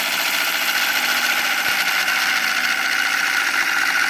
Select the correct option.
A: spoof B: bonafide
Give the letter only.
B